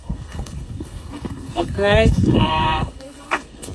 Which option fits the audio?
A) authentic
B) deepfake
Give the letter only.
B